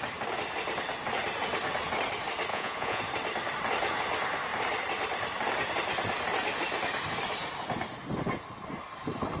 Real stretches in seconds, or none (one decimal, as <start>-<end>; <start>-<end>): 0.0-2.5; 3.0-9.4